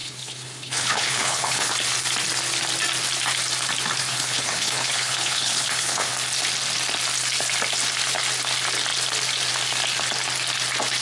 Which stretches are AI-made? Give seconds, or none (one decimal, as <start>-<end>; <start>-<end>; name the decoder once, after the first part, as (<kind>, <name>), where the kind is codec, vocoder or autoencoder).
0.0-1.7 (codec, HILCodec); 4.0-6.1